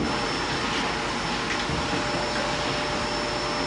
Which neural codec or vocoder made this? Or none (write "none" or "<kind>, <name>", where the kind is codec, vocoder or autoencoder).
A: none